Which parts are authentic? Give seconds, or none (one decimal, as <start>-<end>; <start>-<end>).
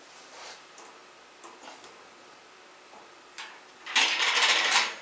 1.0-4.0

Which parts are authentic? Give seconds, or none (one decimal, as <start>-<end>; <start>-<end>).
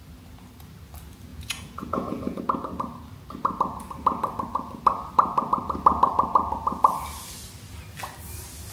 0.0-1.3; 2.4-8.7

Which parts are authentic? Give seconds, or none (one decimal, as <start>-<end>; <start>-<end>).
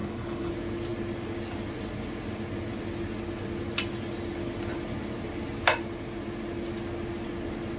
0.5-7.8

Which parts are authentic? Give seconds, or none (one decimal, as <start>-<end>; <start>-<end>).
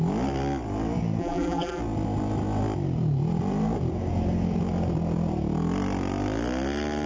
0.0-1.2; 1.8-7.1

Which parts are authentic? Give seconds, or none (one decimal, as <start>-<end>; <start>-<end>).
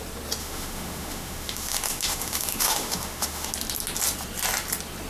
0.0-0.4; 3.5-5.1